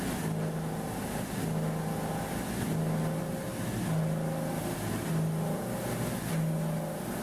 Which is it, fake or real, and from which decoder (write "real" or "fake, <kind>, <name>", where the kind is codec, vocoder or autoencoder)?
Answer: real